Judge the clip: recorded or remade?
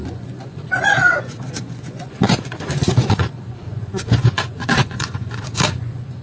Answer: remade